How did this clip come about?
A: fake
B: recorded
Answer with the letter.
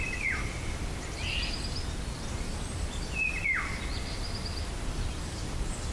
A